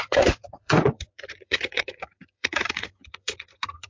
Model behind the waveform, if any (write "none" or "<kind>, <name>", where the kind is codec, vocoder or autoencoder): vocoder, Vocos